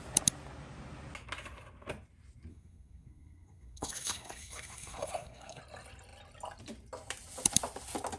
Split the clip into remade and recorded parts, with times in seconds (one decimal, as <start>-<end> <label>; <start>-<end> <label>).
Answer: 0.0-2.5 recorded; 2.5-5.6 remade; 5.6-8.2 recorded